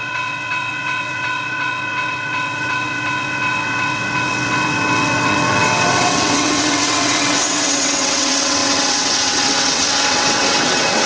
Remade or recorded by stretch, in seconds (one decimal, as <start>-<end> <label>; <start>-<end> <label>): 0.0-11.1 remade